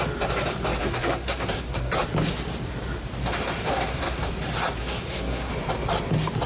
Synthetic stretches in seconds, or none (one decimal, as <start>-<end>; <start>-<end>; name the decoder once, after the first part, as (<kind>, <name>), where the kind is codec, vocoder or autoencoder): 0.8-2.0 (codec, SNAC); 3.6-4.3; 4.8-5.5